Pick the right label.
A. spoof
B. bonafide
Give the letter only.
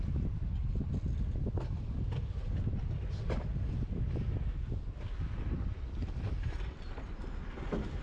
B